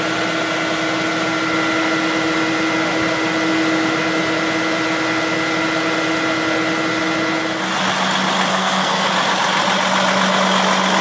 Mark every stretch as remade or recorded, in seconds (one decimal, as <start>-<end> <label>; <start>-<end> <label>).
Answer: 0.0-8.5 recorded; 8.5-9.1 remade; 9.1-11.0 recorded